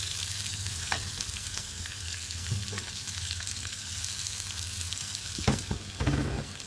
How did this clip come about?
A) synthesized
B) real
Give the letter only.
A